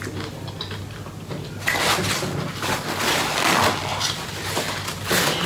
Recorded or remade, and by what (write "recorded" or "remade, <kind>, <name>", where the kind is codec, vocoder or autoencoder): recorded